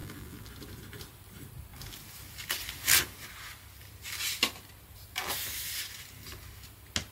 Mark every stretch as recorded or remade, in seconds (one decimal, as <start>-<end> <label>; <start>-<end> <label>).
0.0-0.5 remade; 0.5-7.1 recorded